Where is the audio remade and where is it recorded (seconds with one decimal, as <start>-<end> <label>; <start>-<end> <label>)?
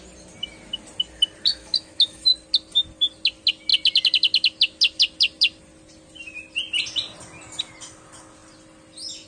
0.0-1.5 recorded; 1.5-2.3 remade; 2.3-9.3 recorded